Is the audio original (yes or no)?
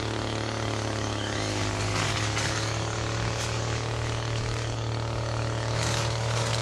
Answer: no